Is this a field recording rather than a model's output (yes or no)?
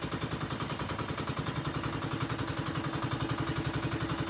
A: yes